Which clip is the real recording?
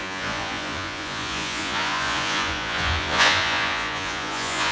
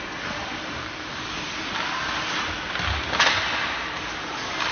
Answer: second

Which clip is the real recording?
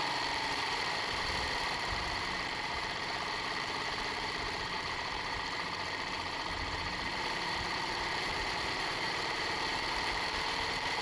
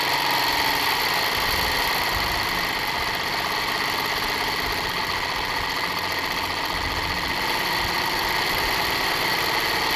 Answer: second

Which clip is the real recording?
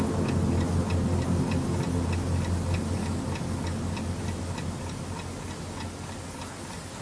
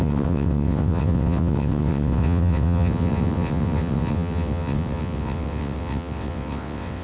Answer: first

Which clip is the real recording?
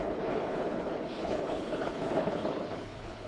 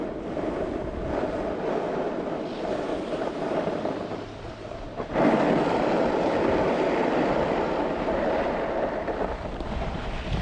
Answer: second